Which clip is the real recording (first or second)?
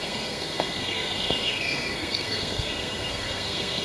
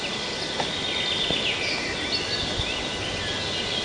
second